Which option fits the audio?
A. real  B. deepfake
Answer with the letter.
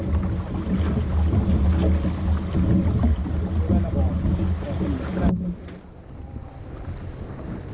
A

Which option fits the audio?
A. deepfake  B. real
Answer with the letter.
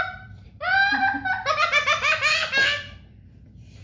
A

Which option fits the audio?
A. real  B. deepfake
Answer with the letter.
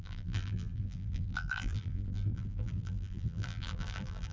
B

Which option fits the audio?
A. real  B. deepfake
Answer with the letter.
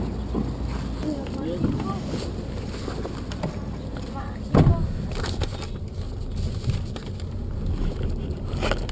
A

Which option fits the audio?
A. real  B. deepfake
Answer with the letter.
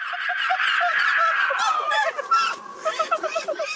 A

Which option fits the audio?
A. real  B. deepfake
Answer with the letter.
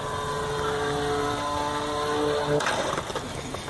B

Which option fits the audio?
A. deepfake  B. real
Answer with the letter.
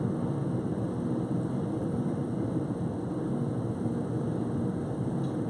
A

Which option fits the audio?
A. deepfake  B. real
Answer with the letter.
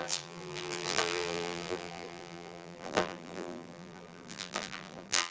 A